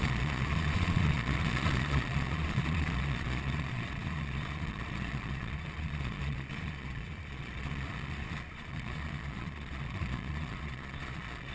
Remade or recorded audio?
remade